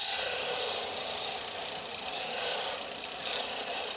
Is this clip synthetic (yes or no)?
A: no